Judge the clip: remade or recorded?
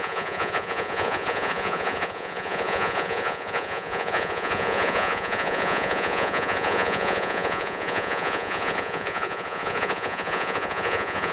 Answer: remade